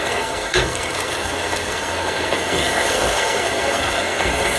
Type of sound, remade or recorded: remade